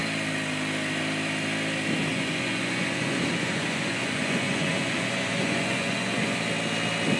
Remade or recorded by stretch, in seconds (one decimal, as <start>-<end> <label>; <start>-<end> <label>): 0.0-2.1 recorded; 2.1-6.4 remade; 6.4-7.2 recorded